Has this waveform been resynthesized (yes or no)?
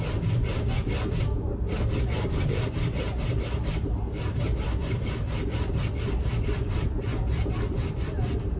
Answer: yes